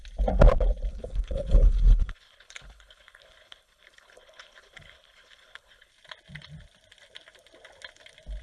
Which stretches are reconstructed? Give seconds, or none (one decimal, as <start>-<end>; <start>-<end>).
0.9-5.9